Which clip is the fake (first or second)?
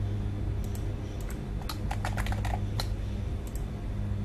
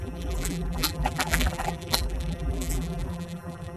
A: second